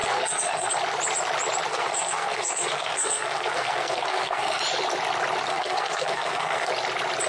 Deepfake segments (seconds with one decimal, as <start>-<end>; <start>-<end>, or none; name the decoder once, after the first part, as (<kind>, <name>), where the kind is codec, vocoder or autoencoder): 0.0-0.7 (codec, SNAC); 1.7-4.6; 5.5-6.7